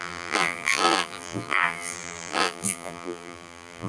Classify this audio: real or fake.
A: fake